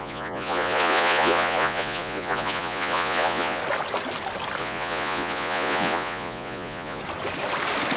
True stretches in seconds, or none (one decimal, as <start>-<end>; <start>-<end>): 3.6-4.6; 7.0-8.0